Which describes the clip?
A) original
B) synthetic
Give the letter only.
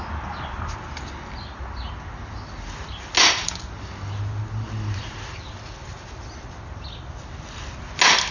A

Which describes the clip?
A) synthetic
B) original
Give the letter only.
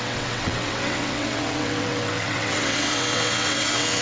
A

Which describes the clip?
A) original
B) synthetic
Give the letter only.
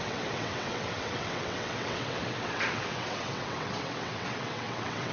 B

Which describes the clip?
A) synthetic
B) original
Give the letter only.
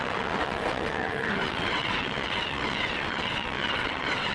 A